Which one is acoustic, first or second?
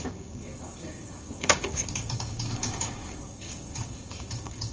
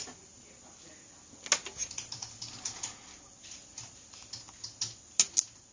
second